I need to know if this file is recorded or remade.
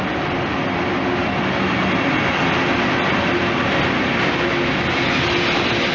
recorded